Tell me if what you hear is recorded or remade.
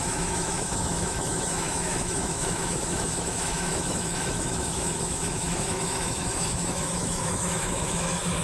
remade